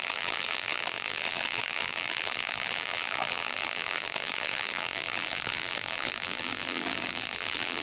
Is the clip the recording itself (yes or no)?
no